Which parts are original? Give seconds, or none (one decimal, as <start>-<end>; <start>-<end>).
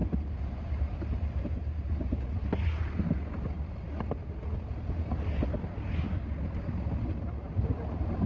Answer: 2.3-8.3